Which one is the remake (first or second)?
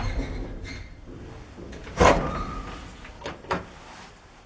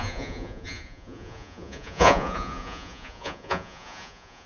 second